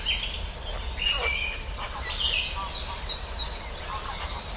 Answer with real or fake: real